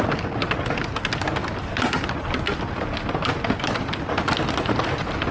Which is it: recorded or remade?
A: recorded